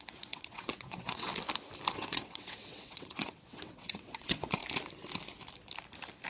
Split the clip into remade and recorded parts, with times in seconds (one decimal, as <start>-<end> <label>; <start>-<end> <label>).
0.0-1.3 remade; 1.3-1.9 recorded; 1.9-4.6 remade; 4.6-6.3 recorded